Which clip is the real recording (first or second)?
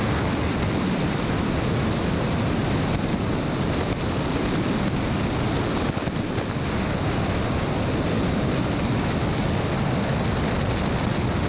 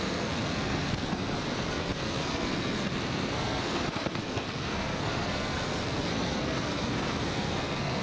first